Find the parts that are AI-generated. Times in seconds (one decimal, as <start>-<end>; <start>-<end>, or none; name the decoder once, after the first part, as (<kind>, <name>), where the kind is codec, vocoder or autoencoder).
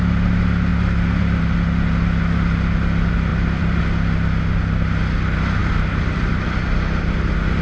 0.7-1.4 (vocoder, BigVGAN v2); 3.3-3.8; 5.6-7.6